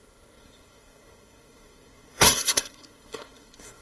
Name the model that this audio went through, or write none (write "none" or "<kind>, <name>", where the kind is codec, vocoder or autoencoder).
codec, SNAC